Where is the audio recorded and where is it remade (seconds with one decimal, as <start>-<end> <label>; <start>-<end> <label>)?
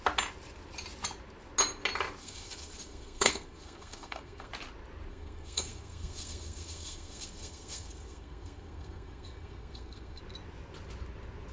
0.0-2.2 recorded; 2.2-4.5 remade; 4.5-5.1 recorded; 5.1-10.2 remade; 10.2-11.5 recorded